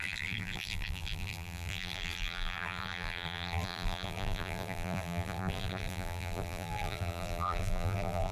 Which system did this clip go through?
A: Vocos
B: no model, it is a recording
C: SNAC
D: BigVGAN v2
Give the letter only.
D